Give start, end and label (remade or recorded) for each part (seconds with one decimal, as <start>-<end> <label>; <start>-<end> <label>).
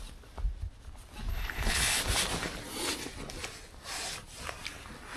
0.0-1.3 recorded; 1.3-2.0 remade; 2.0-5.2 recorded